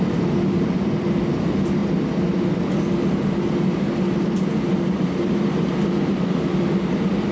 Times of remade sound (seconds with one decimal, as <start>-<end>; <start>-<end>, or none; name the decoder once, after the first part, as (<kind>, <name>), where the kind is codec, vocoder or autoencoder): none